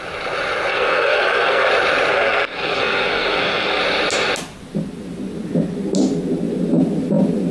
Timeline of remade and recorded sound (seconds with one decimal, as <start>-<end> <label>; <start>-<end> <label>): 0.0-0.7 recorded; 0.7-1.7 remade; 1.7-2.1 recorded; 2.1-3.8 remade; 3.8-7.5 recorded